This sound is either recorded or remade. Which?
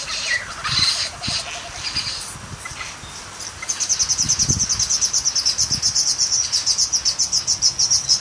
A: recorded